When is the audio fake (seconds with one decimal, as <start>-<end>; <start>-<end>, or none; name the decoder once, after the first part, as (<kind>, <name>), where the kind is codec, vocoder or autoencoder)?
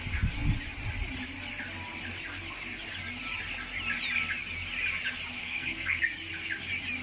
5.4-6.0 (codec, SNAC)